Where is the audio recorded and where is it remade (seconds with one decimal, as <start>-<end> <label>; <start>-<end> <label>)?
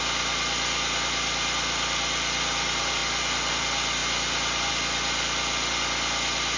0.0-3.0 recorded; 3.0-3.6 remade; 3.6-4.0 recorded; 4.0-4.7 remade; 4.7-6.6 recorded